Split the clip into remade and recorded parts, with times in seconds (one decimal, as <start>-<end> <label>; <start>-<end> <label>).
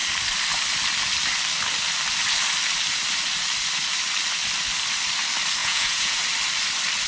0.0-5.6 recorded; 5.6-6.2 remade; 6.2-7.1 recorded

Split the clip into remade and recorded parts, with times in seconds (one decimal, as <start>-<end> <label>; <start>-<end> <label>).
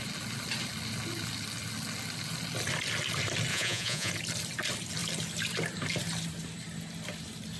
0.0-3.5 recorded; 3.5-4.1 remade; 4.1-7.6 recorded